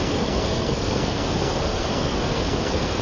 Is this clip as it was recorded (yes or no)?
no